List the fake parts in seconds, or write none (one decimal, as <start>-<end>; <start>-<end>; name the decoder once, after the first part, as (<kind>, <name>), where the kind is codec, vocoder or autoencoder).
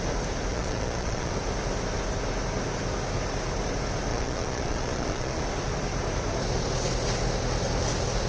0.5-1.3 (vocoder, Vocos); 4.1-5.4